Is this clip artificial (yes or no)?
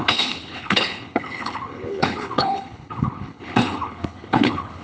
yes